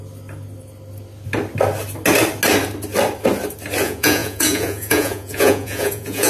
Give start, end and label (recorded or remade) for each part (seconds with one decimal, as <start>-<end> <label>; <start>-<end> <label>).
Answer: 0.0-3.8 recorded; 3.8-6.3 remade